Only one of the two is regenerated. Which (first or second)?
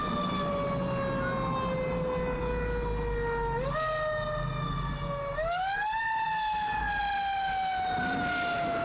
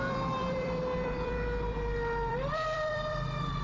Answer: second